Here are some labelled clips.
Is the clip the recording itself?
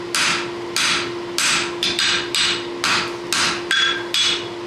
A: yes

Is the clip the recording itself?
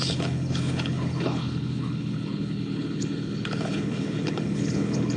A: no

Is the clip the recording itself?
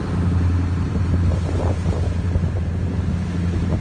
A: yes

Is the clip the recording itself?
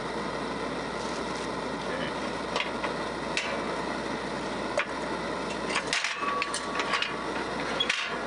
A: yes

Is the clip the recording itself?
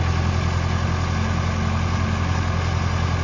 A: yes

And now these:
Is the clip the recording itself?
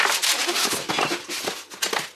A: yes